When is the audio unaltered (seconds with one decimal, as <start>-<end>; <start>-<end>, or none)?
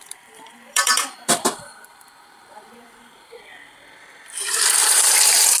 3.3-4.8